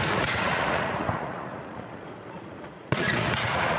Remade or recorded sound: remade